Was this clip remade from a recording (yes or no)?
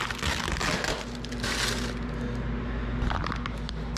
no